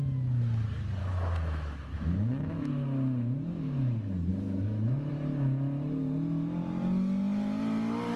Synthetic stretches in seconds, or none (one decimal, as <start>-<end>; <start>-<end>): 1.0-2.7; 4.3-5.1